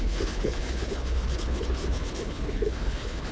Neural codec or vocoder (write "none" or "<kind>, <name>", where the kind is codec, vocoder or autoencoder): codec, HILCodec